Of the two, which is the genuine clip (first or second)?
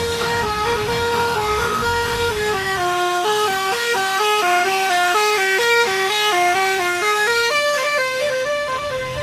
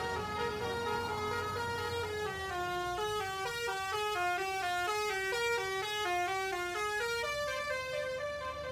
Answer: second